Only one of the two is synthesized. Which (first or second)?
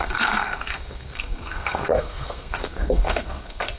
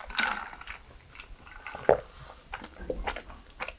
first